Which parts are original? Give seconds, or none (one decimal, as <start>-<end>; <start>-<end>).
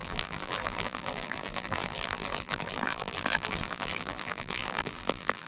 none